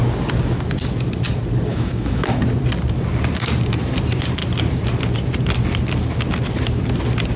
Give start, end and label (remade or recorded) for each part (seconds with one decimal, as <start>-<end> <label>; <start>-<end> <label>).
0.0-1.7 recorded; 1.7-2.4 remade; 2.4-7.4 recorded

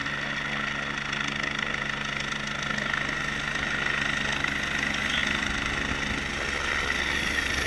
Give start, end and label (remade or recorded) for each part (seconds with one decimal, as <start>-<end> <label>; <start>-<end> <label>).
0.0-7.7 recorded